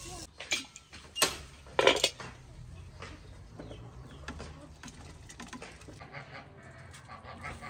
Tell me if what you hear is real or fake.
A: real